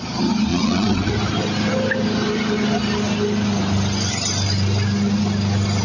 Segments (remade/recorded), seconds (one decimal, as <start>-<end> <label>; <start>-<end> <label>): 0.0-0.5 recorded; 0.5-1.1 remade; 1.1-5.8 recorded